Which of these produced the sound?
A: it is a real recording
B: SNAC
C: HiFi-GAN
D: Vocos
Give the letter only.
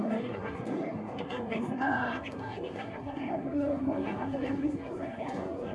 B